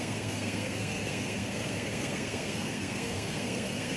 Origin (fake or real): fake